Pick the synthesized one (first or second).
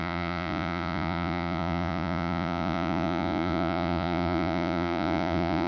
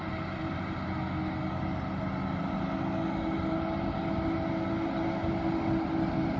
first